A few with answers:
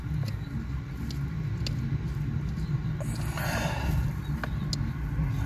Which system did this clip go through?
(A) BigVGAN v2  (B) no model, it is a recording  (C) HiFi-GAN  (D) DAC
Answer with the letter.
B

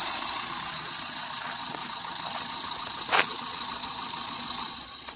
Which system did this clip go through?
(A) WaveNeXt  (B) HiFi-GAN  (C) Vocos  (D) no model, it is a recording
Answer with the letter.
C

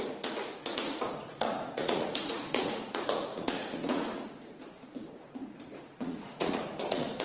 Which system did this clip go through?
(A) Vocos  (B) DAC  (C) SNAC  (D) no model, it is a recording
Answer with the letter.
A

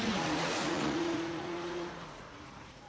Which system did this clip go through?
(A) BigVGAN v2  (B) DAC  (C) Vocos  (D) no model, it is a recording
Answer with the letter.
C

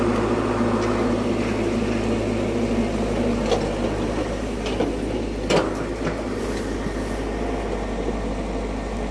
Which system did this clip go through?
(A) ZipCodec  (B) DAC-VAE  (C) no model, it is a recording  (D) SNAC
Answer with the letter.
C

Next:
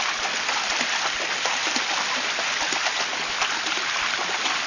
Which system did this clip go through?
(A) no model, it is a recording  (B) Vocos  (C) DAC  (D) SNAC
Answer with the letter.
A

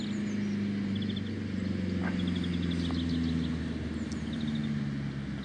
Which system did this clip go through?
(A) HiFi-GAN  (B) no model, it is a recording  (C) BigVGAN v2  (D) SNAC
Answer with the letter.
B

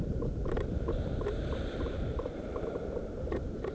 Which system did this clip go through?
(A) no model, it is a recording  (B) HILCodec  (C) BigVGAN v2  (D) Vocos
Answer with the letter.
C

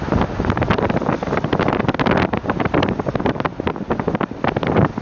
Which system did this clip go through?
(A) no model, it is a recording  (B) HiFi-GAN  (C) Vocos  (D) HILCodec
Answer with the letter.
A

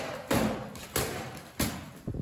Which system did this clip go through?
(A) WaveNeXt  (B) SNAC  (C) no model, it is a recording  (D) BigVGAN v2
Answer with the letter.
C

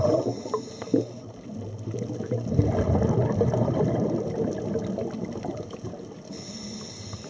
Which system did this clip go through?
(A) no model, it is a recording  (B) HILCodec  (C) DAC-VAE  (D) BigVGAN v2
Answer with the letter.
A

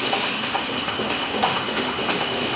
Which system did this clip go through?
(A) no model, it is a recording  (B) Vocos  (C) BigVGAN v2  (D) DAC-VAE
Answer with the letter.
D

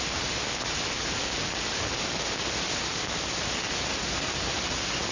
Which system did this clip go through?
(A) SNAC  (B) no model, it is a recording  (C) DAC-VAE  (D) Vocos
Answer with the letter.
B